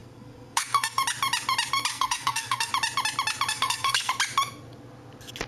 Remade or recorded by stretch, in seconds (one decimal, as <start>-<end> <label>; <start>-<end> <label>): 0.0-1.0 remade; 1.0-1.9 recorded; 1.9-2.7 remade; 2.7-3.5 recorded; 3.5-4.1 remade; 4.1-5.5 recorded